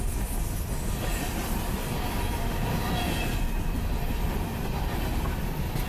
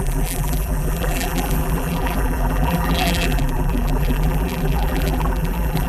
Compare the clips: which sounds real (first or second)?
first